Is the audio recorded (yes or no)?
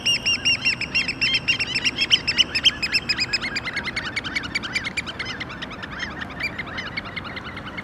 yes